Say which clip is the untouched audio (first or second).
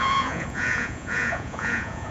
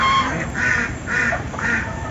second